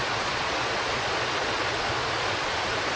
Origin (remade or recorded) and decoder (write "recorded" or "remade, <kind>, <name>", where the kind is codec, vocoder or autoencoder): remade, vocoder, Vocos